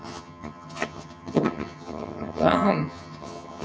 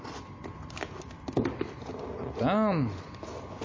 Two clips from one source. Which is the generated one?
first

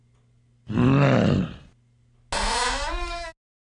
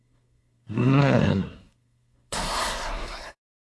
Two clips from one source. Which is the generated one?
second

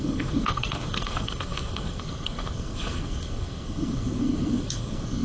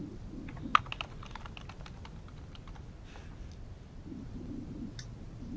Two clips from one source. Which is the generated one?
first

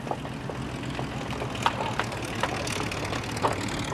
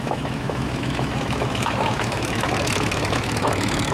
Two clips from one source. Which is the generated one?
second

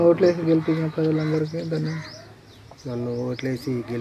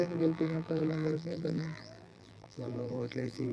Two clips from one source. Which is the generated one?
second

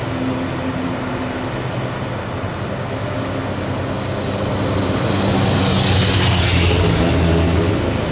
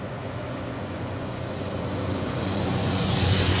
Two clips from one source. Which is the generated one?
second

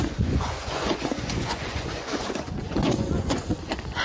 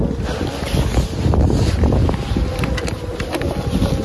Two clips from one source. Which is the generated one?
first